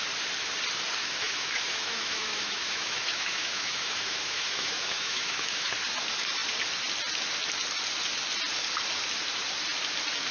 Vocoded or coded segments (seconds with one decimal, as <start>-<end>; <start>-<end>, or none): 1.0-5.7